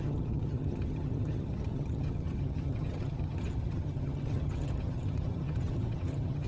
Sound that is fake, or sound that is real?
fake